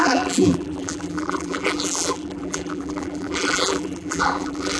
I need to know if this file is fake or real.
fake